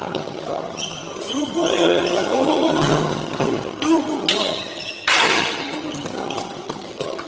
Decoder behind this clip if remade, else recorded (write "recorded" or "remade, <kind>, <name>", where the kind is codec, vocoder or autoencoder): remade, vocoder, HiFi-GAN